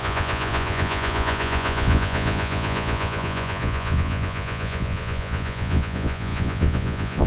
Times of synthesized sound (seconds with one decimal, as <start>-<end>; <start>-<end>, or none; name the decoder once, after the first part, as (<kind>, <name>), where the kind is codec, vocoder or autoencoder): 0.0-7.3 (vocoder, Vocos)